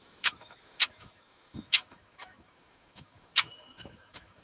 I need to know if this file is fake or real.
fake